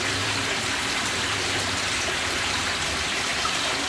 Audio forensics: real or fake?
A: fake